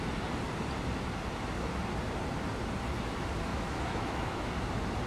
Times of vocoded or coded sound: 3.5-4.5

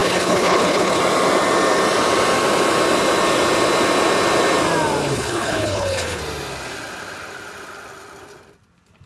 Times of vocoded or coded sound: 0.0-1.0; 5.0-6.2

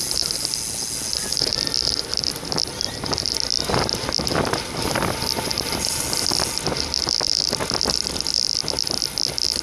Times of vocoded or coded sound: none

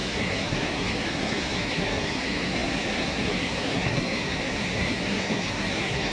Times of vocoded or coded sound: 0.0-6.1